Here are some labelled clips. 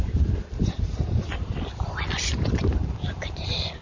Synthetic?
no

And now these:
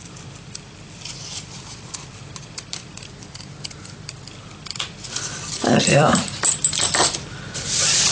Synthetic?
yes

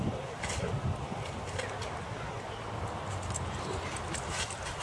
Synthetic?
no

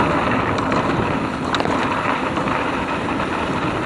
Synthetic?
no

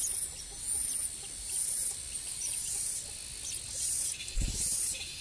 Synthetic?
no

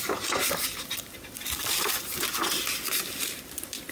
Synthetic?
no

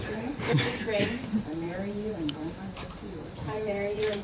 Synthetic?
yes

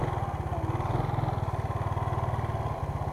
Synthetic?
no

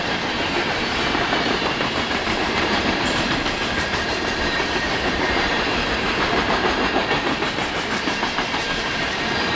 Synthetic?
yes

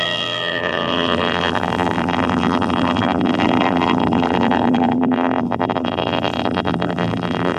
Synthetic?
yes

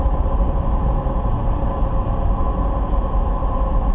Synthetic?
no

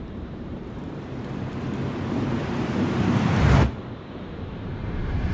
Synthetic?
yes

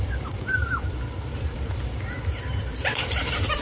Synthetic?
yes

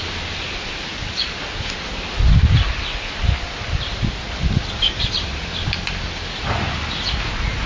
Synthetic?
no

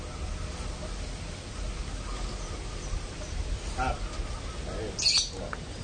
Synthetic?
no